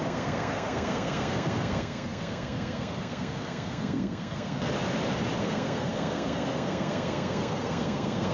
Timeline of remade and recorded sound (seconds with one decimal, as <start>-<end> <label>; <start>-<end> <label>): 0.0-4.7 remade; 4.7-5.4 recorded; 5.4-8.3 remade